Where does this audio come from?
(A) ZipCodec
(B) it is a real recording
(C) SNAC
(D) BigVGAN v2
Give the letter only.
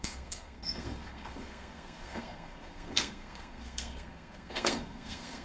C